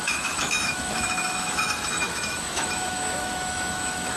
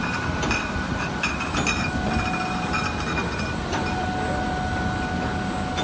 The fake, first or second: first